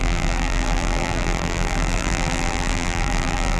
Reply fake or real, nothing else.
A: fake